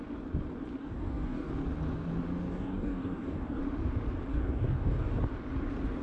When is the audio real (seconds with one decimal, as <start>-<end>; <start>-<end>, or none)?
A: 0.0-0.8; 1.5-2.5; 3.6-4.3; 5.2-6.0